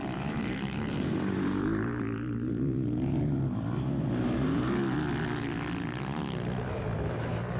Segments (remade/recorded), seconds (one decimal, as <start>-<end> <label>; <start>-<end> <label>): 0.0-3.5 remade; 3.5-7.6 recorded